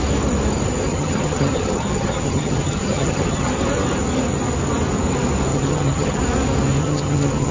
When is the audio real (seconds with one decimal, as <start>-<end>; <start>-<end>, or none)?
0.0-0.9; 3.5-5.5; 6.2-6.8